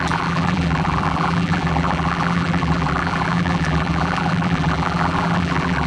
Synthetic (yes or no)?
yes